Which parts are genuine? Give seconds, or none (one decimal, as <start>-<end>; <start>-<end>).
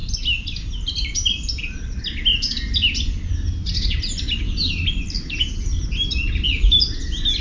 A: 0.0-7.4